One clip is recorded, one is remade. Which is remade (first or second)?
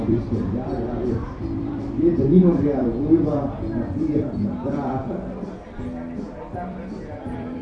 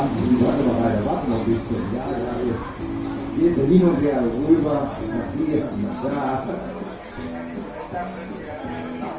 first